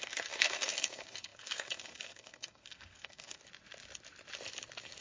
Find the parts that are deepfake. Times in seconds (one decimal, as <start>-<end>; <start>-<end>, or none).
0.0-3.4